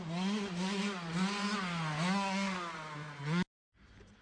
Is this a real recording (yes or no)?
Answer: yes